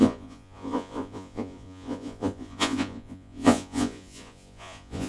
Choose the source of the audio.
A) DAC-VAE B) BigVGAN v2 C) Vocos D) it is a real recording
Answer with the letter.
C